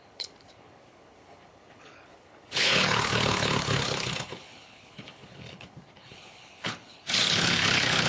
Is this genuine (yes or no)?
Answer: no